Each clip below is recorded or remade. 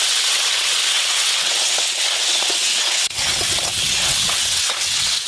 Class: remade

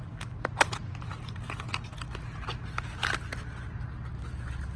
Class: recorded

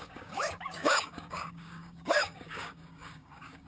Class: remade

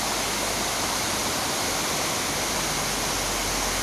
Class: recorded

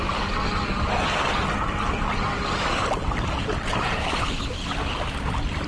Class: recorded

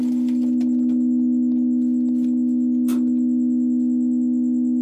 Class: recorded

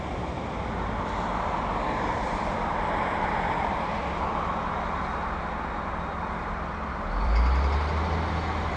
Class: remade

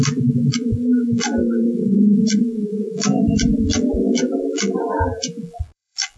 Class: remade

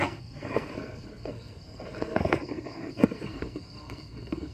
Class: remade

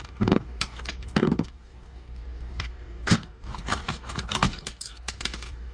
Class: remade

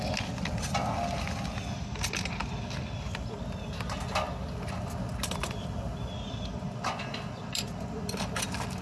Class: recorded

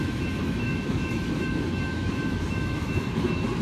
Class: remade